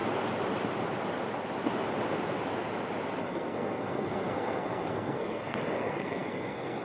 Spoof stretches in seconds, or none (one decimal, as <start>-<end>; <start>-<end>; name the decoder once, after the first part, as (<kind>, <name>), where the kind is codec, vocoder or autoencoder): 3.2-6.8 (codec, SNAC)